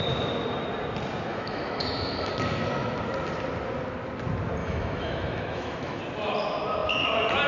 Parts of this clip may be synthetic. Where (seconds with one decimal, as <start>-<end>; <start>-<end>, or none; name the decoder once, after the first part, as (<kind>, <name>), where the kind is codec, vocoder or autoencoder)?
1.3-2.3 (autoencoder, DAC-VAE); 4.6-6.0